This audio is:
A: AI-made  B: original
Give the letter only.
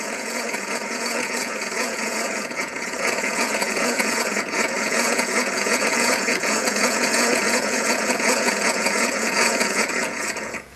A